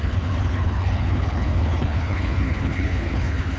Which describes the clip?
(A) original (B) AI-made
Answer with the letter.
B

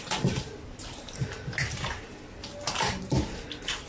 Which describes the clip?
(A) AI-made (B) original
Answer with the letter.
B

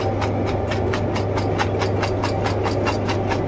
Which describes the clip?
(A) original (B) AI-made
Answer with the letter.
A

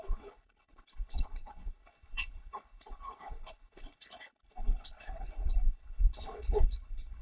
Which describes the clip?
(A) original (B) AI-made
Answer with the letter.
B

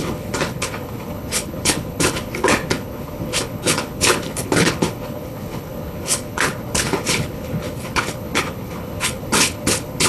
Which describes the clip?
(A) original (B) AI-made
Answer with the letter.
B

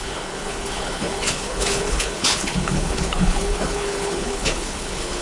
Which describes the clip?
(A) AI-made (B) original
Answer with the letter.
A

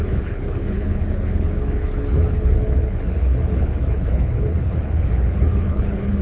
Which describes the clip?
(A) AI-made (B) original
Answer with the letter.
A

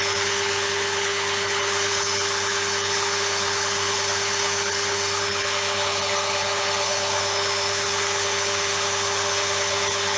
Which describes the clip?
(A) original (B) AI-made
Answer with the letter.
B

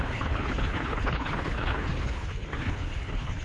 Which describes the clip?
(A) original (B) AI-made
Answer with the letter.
B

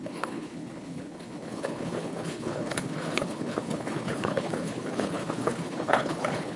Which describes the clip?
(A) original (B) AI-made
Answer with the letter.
B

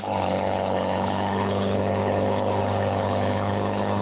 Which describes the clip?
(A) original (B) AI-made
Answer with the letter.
B